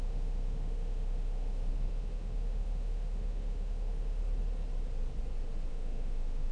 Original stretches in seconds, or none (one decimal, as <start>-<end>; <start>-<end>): 4.2-5.7